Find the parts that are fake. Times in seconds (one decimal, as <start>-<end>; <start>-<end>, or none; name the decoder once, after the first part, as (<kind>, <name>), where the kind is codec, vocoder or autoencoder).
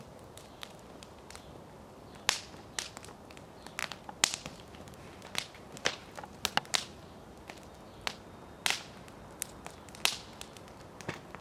none